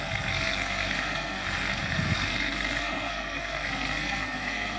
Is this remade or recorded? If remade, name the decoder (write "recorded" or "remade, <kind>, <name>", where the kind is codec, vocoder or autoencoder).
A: remade, codec, SNAC